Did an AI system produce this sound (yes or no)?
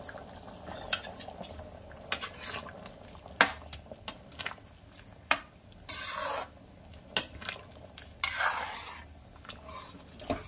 no